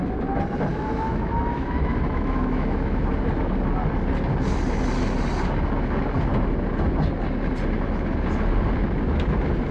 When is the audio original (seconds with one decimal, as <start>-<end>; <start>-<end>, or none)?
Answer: 0.0-0.7; 3.0-9.7